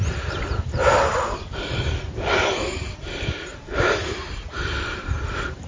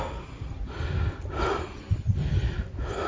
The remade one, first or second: first